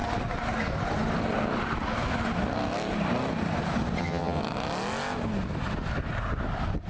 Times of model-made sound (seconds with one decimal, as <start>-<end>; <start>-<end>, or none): 4.0-4.4